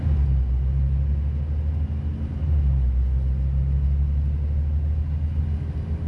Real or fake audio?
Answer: real